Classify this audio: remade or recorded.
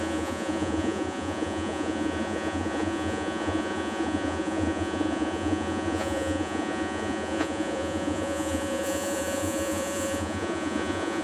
remade